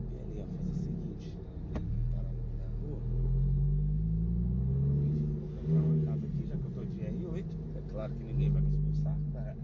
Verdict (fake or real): real